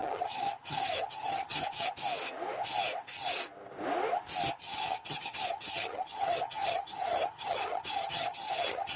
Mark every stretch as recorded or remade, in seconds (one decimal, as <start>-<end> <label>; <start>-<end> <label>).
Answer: 0.0-1.9 remade; 1.9-4.6 recorded; 4.6-9.0 remade